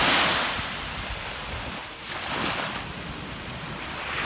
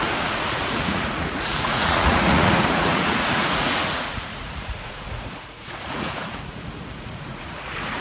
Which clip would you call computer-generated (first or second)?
second